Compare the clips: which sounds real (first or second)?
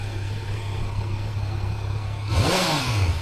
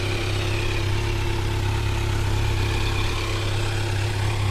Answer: second